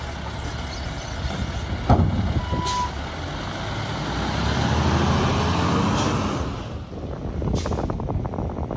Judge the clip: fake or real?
real